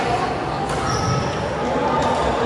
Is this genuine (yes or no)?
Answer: yes